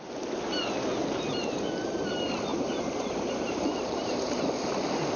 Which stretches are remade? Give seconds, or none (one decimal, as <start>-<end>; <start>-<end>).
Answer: 2.5-4.4